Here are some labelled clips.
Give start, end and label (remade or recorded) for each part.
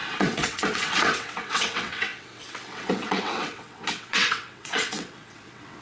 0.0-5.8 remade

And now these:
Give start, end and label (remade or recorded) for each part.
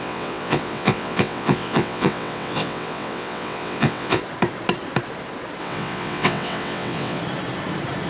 0.0-4.2 remade; 4.2-5.6 recorded; 5.6-7.2 remade; 7.2-8.1 recorded